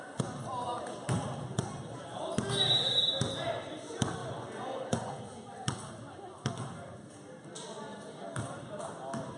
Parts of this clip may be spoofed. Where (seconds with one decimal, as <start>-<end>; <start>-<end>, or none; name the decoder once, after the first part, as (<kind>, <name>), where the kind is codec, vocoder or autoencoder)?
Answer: 4.2-5.2 (vocoder, Vocos)